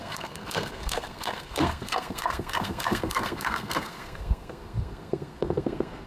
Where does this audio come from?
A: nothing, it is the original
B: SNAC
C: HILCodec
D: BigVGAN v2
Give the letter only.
B